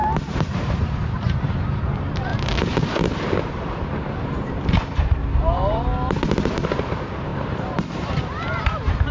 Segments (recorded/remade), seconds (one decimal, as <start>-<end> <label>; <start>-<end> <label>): 0.0-5.2 remade; 5.2-6.1 recorded; 6.1-9.1 remade